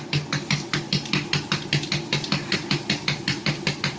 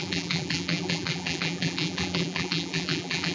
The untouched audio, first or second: first